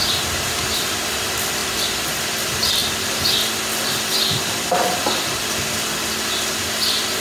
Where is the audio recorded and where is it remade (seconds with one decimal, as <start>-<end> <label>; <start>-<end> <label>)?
0.0-1.0 remade; 1.0-7.2 recorded